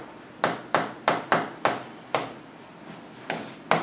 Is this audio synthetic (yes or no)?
no